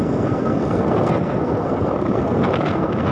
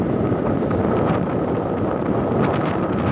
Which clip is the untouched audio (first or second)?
second